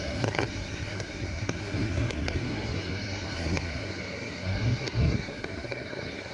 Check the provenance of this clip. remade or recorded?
remade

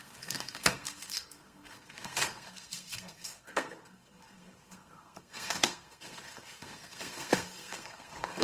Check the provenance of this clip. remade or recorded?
remade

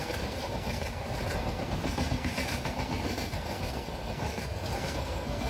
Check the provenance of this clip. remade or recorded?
remade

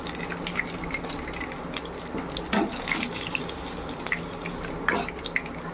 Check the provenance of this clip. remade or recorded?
recorded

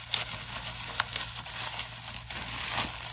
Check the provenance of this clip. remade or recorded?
recorded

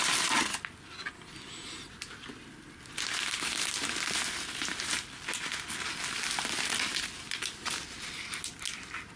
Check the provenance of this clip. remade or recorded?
recorded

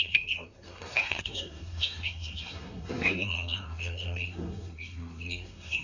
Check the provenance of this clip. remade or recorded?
remade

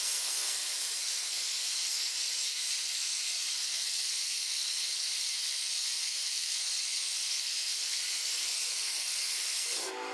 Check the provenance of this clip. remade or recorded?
remade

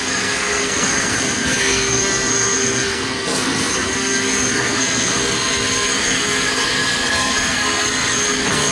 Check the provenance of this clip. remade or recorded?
remade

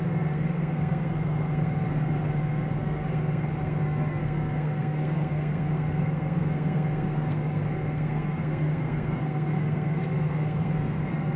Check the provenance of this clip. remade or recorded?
remade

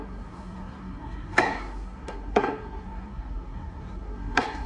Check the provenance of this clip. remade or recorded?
remade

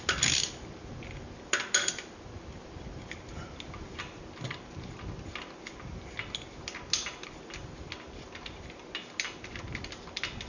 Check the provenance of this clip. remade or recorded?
recorded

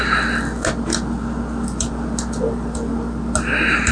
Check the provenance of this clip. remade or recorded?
recorded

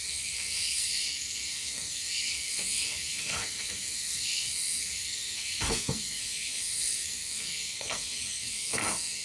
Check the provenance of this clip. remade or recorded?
remade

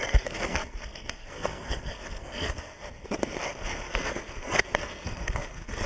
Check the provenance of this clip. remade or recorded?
remade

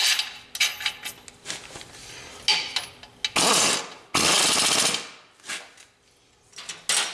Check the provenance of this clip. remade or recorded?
recorded